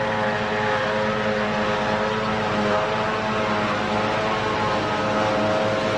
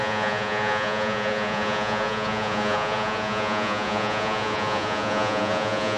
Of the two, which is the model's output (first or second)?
second